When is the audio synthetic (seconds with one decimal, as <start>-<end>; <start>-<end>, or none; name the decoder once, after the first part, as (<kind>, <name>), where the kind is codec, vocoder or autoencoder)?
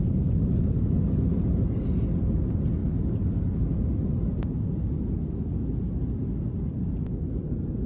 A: none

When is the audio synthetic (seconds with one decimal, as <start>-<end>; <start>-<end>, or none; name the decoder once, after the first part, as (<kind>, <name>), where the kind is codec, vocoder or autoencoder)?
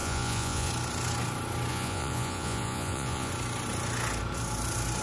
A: 0.0-0.7 (vocoder, Vocos); 1.7-3.3